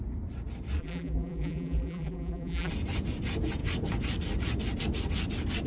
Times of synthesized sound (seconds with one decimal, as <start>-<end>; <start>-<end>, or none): 0.8-2.7